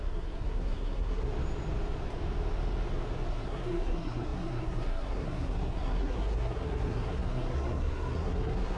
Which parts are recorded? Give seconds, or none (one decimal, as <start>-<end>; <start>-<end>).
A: 1.3-3.3